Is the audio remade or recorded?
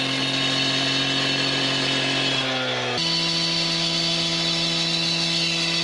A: recorded